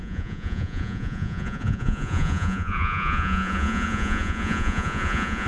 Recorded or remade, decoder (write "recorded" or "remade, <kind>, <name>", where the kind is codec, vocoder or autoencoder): remade, vocoder, Vocos